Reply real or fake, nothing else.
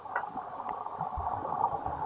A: real